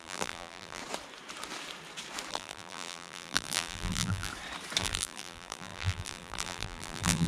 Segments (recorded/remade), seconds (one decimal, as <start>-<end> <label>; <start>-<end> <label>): 0.0-0.8 remade; 0.8-2.3 recorded; 2.3-4.3 remade; 4.3-4.8 recorded; 4.8-7.3 remade